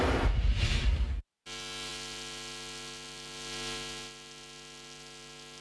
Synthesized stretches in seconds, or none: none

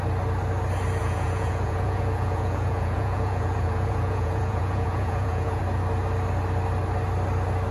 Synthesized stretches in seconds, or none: 1.0-5.6 (vocoder, Vocos)

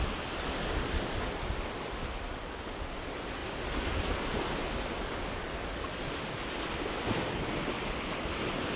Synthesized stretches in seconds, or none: none

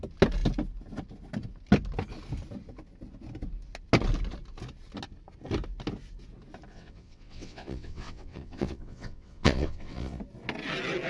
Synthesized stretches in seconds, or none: 6.7-10.2 (vocoder, WaveNeXt)

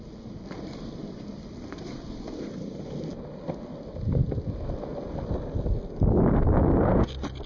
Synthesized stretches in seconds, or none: 1.0-3.0 (vocoder, BigVGAN v2)

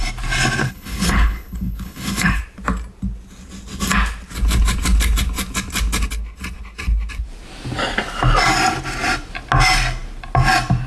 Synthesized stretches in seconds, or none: 0.6-2.4 (codec, HILCodec)